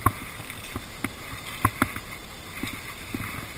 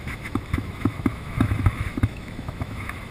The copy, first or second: second